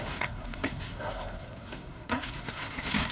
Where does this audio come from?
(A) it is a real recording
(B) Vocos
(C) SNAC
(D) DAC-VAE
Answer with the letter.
C